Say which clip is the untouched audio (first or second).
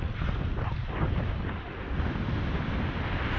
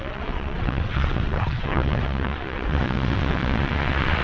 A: first